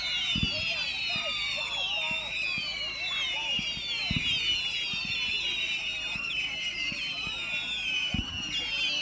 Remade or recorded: recorded